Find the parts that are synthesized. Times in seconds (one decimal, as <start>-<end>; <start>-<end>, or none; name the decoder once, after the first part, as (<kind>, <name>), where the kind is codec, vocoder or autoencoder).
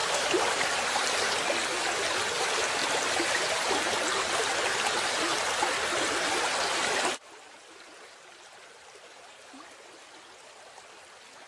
0.0-1.4 (vocoder, BigVGAN v2)